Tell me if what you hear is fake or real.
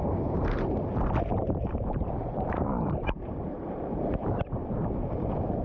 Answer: fake